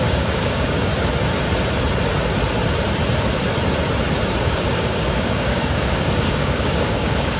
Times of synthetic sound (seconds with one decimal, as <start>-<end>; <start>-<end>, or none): 0.0-0.9; 4.4-7.4